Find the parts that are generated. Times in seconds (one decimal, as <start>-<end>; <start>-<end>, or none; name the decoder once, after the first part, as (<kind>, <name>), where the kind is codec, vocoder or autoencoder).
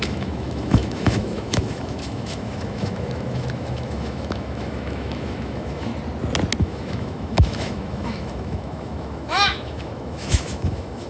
0.0-5.9 (autoencoder, DAC-VAE); 6.6-11.1